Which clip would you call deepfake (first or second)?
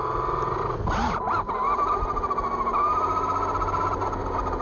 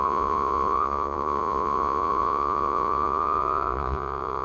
second